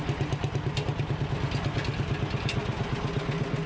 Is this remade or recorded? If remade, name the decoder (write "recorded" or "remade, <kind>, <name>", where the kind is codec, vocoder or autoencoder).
recorded